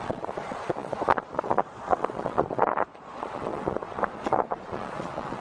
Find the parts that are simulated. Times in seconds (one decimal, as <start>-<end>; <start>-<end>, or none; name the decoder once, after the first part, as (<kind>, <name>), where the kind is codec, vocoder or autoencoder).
0.0-5.4 (vocoder, Vocos)